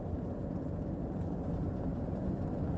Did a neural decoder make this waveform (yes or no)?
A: no